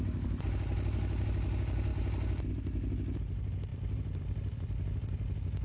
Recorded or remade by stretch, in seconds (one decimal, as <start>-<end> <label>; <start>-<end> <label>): 0.0-5.6 recorded